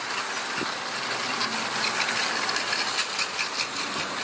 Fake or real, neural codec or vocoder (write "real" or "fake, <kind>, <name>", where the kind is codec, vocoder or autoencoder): real